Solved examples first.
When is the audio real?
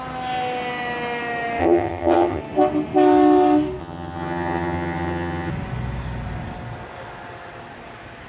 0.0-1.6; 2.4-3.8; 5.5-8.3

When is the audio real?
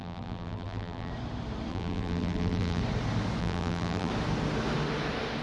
1.1-1.7; 2.8-3.4; 4.1-5.4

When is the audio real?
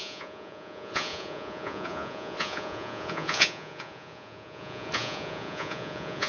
none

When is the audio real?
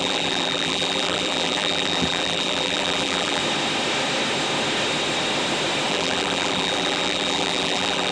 3.4-5.9